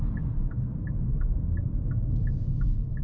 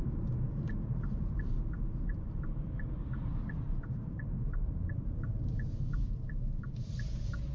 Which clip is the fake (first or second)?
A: second